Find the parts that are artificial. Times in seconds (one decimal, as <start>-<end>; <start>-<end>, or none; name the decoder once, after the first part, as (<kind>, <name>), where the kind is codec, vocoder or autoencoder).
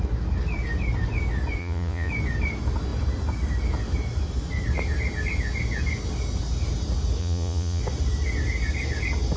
1.6-2.1 (vocoder, Vocos); 7.2-7.8